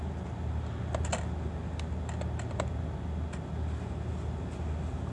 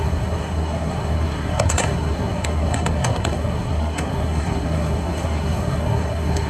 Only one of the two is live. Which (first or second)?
first